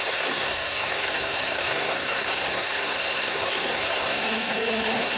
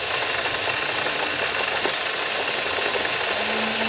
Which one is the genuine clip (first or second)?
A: second